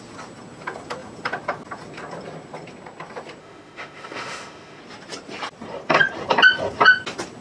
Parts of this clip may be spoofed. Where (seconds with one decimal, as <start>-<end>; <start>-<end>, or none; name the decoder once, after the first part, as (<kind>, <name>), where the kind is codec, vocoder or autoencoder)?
3.4-4.8 (autoencoder, DAC-VAE)